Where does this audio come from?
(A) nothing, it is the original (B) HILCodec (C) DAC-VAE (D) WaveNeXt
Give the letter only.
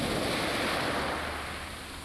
A